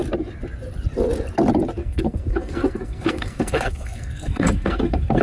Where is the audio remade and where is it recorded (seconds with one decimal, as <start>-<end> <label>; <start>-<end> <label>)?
0.0-1.8 recorded; 1.8-5.2 remade